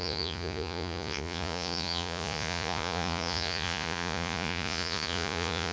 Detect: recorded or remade remade